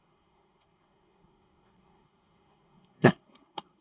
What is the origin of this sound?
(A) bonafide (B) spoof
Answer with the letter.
B